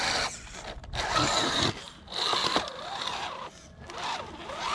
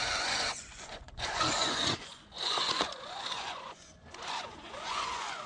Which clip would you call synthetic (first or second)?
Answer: second